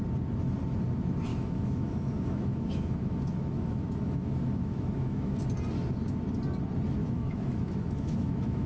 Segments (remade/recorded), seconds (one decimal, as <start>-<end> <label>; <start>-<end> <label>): 0.0-1.3 recorded; 1.3-5.4 remade; 5.4-7.0 recorded; 7.0-8.7 remade